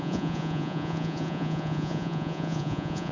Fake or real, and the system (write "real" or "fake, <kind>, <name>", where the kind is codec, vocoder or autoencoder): fake, vocoder, Vocos